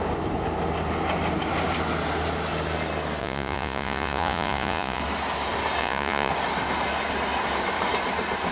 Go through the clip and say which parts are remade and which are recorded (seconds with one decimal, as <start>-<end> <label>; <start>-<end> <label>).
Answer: 0.0-3.2 recorded; 3.2-5.0 remade; 5.0-5.8 recorded; 5.8-6.3 remade; 6.3-8.5 recorded